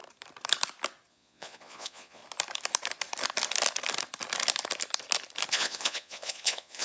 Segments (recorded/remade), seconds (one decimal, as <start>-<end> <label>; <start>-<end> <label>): 0.0-1.1 recorded; 1.1-2.2 remade; 2.2-5.5 recorded; 5.5-6.8 remade